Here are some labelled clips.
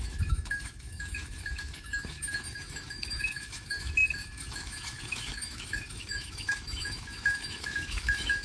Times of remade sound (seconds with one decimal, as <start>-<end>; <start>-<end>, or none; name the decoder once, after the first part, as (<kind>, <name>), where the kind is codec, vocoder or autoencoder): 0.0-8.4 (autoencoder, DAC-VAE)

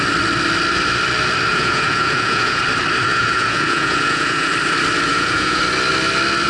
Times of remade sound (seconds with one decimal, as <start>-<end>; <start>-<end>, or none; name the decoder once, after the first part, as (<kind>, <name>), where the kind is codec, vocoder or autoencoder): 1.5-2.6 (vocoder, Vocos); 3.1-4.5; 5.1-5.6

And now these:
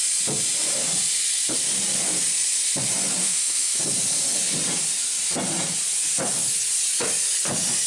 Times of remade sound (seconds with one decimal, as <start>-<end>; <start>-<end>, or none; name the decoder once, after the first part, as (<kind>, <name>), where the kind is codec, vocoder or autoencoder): 3.2-3.8 (autoencoder, DAC-VAE)